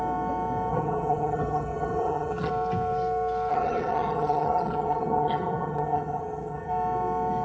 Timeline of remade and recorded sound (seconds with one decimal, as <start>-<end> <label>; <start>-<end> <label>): 0.0-0.7 recorded; 0.7-2.5 remade; 2.5-3.5 recorded; 3.5-6.7 remade; 6.7-7.4 recorded